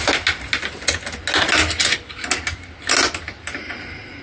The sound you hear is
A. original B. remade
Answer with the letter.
A